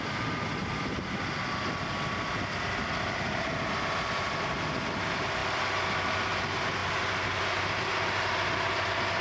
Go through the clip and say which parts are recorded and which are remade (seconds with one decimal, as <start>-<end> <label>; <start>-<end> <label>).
0.0-9.2 recorded